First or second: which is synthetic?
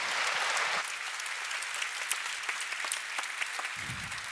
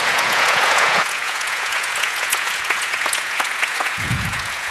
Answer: second